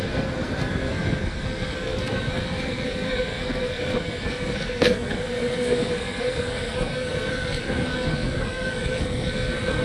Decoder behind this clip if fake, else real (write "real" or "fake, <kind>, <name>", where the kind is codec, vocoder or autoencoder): fake, codec, SNAC